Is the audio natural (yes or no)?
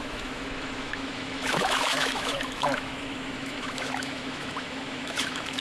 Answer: no